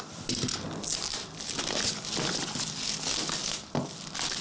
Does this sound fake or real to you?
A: real